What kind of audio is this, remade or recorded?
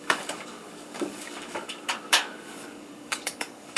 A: remade